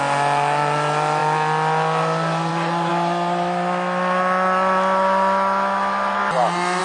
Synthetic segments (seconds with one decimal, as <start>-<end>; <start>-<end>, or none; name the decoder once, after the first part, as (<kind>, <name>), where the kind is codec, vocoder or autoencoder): none